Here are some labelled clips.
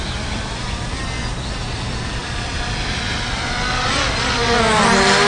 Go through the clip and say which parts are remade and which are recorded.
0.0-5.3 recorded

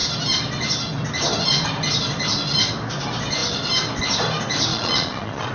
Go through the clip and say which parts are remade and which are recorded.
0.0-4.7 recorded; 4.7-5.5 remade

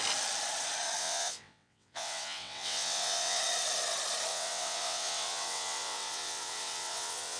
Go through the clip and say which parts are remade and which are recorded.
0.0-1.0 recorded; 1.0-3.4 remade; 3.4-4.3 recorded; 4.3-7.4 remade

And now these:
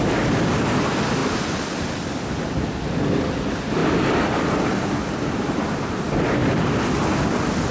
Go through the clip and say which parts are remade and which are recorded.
0.0-7.7 recorded